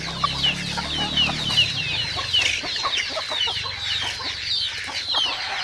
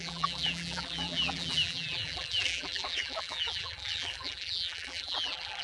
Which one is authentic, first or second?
first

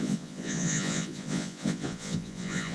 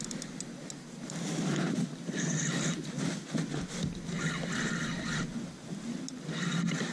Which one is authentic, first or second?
second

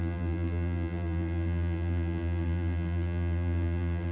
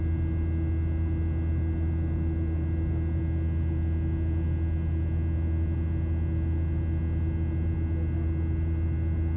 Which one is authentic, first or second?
second